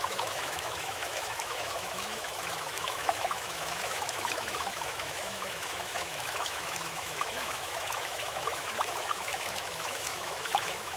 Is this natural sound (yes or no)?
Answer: no